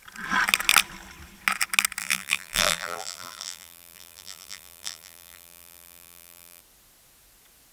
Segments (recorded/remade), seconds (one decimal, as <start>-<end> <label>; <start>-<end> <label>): 0.0-2.0 recorded; 2.0-6.6 remade; 6.6-7.7 recorded